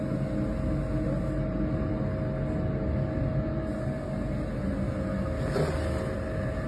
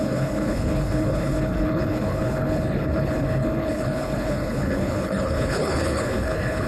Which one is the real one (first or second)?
first